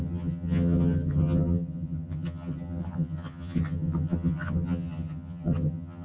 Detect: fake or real fake